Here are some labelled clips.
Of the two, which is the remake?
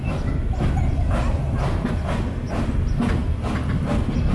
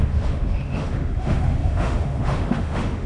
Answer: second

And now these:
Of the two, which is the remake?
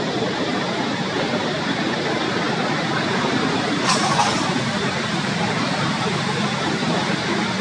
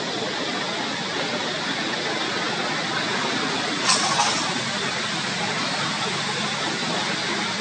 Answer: first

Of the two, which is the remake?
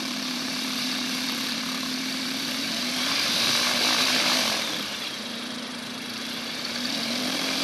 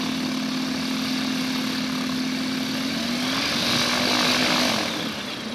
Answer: first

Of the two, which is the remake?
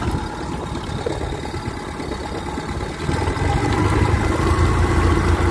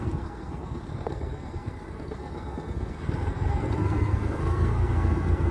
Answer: second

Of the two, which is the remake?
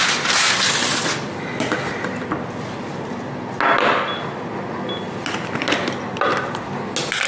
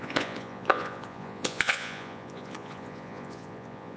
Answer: second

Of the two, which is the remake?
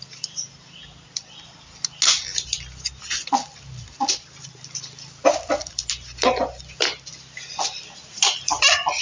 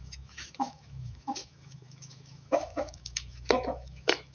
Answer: second